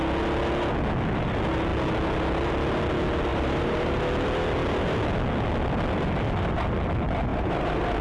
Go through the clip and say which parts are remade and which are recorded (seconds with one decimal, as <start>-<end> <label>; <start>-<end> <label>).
0.0-3.3 recorded; 3.3-4.0 remade; 4.0-7.3 recorded; 7.3-8.0 remade